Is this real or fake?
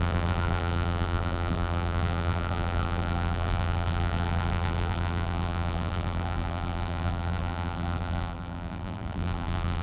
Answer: fake